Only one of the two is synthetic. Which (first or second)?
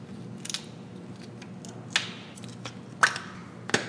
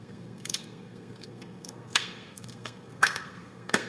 second